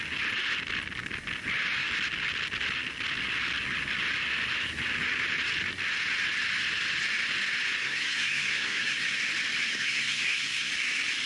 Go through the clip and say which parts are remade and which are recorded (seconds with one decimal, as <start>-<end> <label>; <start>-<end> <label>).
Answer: 0.0-7.8 recorded; 7.8-9.2 remade; 9.2-9.7 recorded; 9.7-10.7 remade; 10.7-11.3 recorded